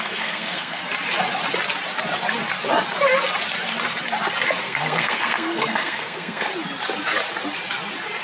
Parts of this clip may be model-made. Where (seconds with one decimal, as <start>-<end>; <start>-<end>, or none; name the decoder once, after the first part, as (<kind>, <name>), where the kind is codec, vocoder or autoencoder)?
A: 0.0-0.8 (codec, SNAC); 4.6-6.5